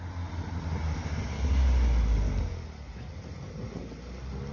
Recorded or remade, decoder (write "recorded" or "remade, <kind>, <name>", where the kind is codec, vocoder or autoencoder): recorded